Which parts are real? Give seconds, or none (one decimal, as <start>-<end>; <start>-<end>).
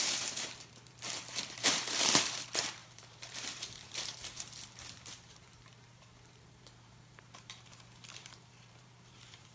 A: none